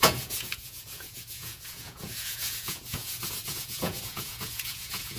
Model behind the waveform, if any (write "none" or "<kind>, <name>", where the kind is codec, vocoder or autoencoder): vocoder, Vocos